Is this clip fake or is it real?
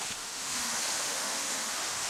fake